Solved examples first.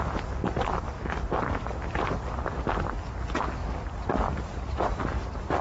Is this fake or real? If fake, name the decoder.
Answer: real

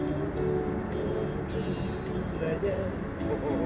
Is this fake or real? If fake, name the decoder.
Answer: real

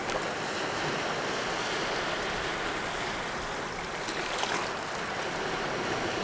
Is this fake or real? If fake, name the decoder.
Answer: real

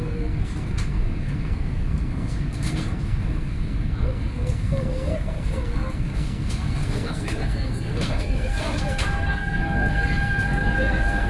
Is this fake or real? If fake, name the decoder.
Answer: fake, codec, SNAC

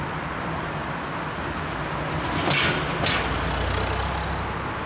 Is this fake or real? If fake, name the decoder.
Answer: real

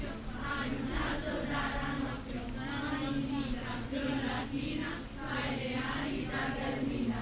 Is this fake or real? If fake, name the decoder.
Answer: real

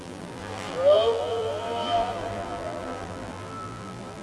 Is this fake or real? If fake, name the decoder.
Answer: fake, vocoder, BigVGAN v2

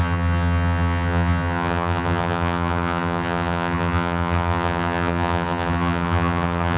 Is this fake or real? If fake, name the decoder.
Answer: fake, vocoder, HiFi-GAN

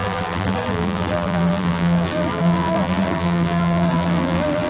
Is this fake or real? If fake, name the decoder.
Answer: fake, vocoder, BigVGAN v2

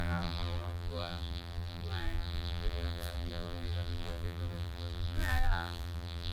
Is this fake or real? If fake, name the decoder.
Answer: fake, vocoder, BigVGAN v2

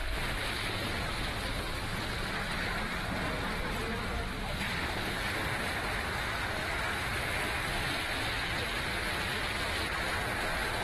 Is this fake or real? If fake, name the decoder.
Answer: real